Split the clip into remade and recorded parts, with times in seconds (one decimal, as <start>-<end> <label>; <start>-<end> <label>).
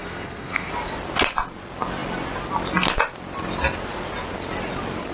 0.0-0.7 remade; 0.7-5.1 recorded